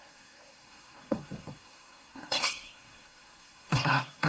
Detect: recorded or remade remade